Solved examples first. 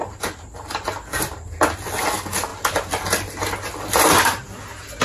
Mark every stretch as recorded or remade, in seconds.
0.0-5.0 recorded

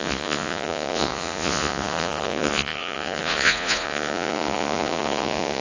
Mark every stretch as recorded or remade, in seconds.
0.0-5.6 remade

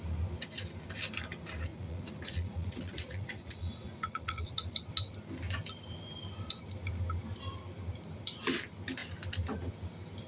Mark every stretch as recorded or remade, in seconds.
0.0-1.7 recorded; 1.7-4.4 remade; 4.4-10.3 recorded